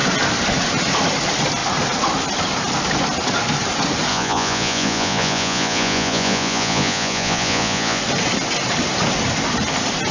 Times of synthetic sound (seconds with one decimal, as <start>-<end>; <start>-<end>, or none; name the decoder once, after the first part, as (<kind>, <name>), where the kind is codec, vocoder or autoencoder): 4.1-8.0 (vocoder, Vocos)